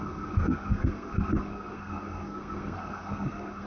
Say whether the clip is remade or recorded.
remade